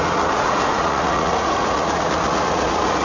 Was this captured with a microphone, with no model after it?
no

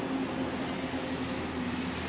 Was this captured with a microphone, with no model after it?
yes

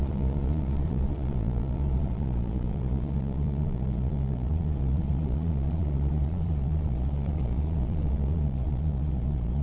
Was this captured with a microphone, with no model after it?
no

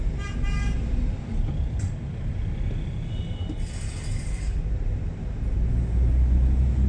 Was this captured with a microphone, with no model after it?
yes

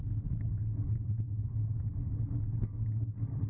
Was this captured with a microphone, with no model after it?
yes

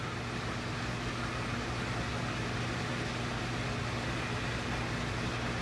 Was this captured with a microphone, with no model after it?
yes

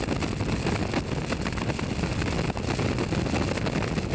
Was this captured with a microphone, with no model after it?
yes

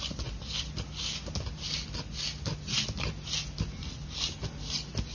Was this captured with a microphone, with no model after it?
yes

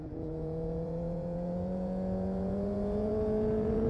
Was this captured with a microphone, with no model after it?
no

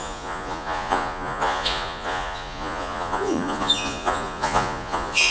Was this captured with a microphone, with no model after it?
no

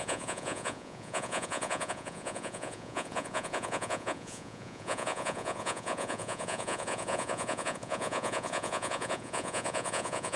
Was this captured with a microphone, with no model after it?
no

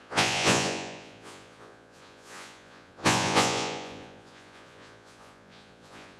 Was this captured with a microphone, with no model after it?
no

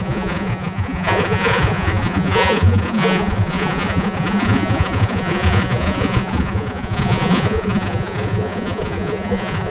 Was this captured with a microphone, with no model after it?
no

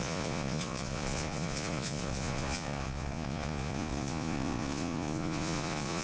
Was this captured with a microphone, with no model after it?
no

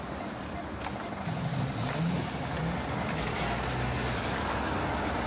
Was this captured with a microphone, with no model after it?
yes